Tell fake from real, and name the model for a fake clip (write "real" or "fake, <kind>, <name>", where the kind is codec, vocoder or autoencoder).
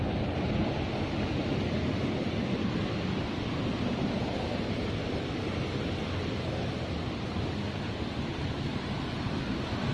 real